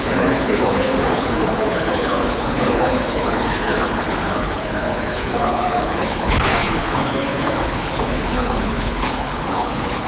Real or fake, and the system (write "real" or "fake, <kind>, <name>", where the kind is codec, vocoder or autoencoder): fake, codec, HILCodec